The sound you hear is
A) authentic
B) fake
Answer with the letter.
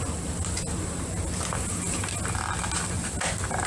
A